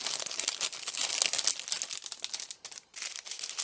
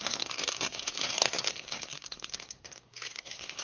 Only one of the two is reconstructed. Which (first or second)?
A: second